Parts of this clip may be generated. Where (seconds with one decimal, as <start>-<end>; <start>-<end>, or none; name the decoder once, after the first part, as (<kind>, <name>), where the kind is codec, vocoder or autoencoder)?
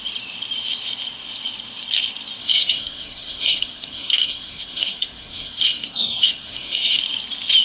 2.4-7.0 (codec, SNAC)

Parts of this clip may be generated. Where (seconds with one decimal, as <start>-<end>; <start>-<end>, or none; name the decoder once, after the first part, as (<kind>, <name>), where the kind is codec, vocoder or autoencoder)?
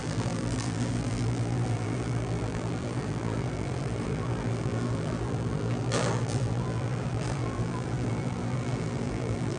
0.0-9.6 (vocoder, BigVGAN v2)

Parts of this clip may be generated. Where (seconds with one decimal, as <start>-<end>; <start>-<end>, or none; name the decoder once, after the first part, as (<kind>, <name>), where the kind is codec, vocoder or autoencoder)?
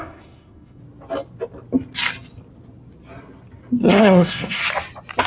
0.0-0.8 (codec, SNAC); 4.0-4.6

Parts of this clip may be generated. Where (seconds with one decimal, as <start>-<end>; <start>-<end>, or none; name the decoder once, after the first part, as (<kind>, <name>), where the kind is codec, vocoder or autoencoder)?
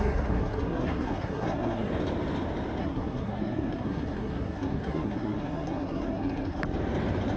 0.0-1.9 (codec, SNAC); 2.8-6.6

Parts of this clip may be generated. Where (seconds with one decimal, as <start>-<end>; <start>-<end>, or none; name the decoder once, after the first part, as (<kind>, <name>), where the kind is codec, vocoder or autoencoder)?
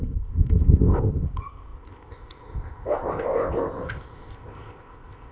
0.0-5.3 (codec, ZipCodec)